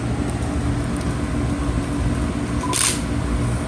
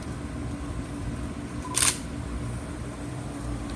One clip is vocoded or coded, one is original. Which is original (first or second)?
first